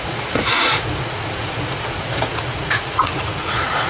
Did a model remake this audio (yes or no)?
yes